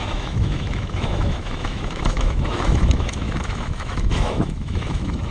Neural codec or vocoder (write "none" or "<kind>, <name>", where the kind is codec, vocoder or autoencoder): autoencoder, DAC-VAE